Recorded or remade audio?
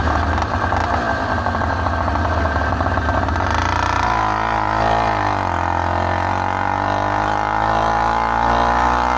recorded